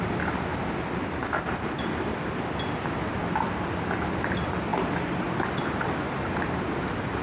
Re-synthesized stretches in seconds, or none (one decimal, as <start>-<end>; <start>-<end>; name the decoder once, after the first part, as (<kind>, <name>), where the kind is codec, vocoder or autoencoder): none